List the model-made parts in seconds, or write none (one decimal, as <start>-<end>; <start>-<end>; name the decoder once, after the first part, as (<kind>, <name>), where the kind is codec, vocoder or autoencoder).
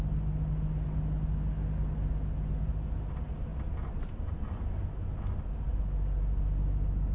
none